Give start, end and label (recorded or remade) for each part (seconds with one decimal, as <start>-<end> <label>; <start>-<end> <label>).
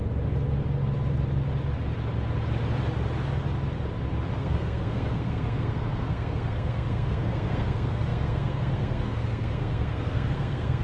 0.0-4.4 recorded; 4.4-10.8 remade